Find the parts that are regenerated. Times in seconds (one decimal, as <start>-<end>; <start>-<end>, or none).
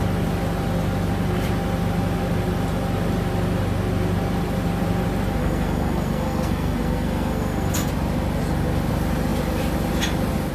5.4-7.9